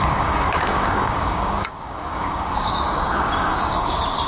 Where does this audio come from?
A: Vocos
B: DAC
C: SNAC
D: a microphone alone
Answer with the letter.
B